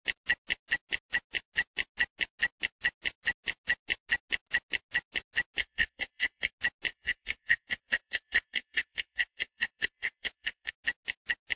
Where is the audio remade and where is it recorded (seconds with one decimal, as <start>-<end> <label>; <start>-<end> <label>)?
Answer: 0.0-5.6 recorded; 5.6-6.5 remade; 6.5-6.9 recorded; 6.9-10.7 remade; 10.7-11.6 recorded